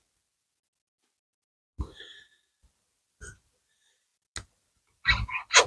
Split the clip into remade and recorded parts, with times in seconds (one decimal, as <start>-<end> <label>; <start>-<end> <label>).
0.0-1.3 recorded; 1.3-2.0 remade; 2.0-5.7 recorded

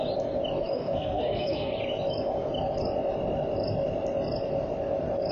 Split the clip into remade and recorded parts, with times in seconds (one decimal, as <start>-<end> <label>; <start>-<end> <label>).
0.0-0.6 recorded; 0.6-1.7 remade; 1.7-5.3 recorded